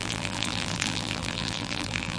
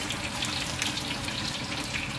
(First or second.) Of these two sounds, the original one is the second